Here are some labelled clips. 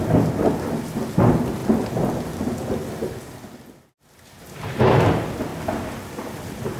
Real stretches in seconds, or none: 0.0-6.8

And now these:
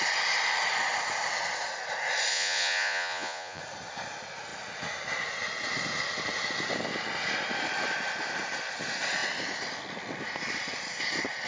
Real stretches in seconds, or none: 0.0-2.3; 3.6-11.5

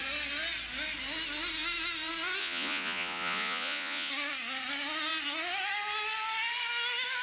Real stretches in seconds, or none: 0.0-2.4; 4.1-7.2

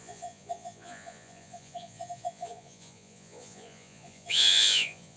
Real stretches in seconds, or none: none

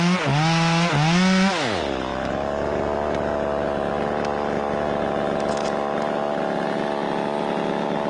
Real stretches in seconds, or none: 0.0-8.1

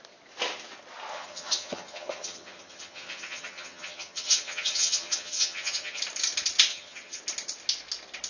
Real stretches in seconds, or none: 0.0-1.1; 6.0-6.7; 7.2-8.3

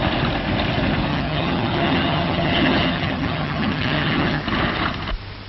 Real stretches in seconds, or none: 0.0-1.1; 4.4-5.5

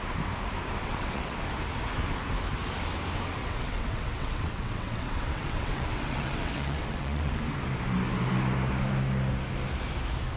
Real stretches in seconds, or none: 0.0-0.8; 1.4-3.4; 7.3-10.4